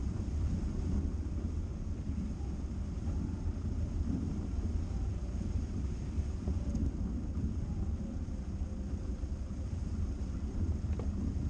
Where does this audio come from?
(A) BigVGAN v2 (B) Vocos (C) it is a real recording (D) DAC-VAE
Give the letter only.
A